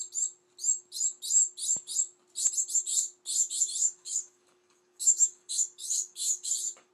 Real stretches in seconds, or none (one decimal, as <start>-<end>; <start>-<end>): 0.0-3.8